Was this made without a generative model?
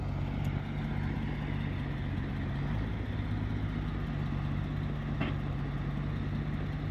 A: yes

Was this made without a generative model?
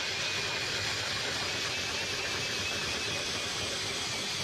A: yes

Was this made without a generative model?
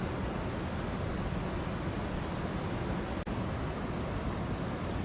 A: yes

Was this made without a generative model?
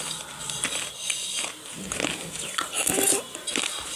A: yes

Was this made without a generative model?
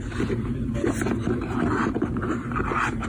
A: yes